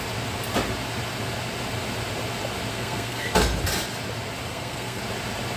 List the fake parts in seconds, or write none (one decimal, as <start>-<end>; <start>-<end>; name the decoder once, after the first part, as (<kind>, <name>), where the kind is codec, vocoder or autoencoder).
2.7-3.3 (codec, SNAC); 4.5-5.0